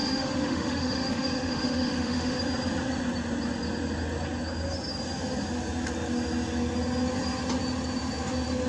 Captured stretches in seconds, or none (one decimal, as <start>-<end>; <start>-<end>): 2.4-8.7